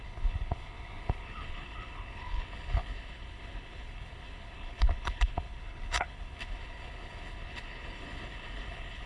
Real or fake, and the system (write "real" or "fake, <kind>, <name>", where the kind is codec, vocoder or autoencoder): fake, codec, HILCodec